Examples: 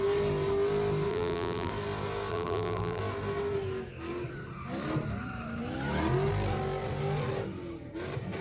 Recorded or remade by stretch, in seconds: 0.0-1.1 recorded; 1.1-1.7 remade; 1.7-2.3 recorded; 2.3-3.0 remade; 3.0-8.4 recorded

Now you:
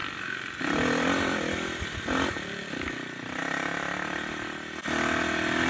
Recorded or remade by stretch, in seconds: 0.0-5.7 recorded

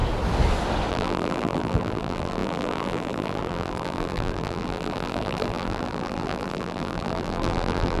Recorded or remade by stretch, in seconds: 0.0-0.9 recorded; 0.9-8.0 remade

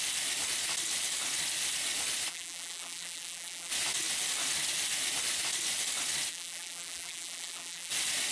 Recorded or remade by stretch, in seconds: 0.0-2.3 recorded; 2.3-3.7 remade; 3.7-6.3 recorded; 6.3-7.9 remade; 7.9-8.3 recorded

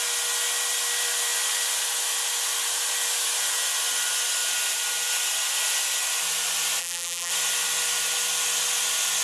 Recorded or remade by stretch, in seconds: 0.0-6.8 recorded; 6.8-7.3 remade; 7.3-9.2 recorded

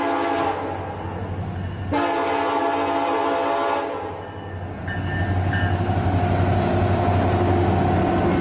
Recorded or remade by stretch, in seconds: 0.0-8.4 recorded

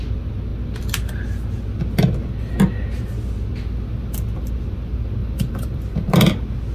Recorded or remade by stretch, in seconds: 0.0-5.2 recorded; 5.2-6.2 remade; 6.2-6.7 recorded

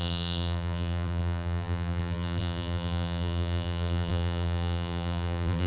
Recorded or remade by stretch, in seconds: 0.0-5.7 remade